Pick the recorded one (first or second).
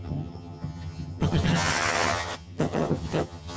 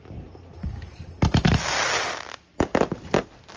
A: second